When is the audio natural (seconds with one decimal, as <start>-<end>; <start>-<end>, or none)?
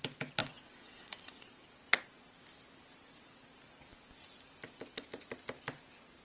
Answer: 0.0-0.4; 1.6-6.2